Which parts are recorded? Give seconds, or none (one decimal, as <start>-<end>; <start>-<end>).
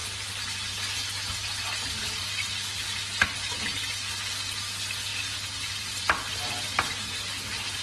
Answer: 0.0-7.8